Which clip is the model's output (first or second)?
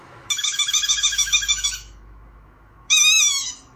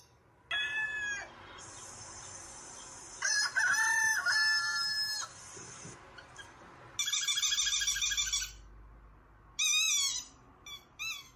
first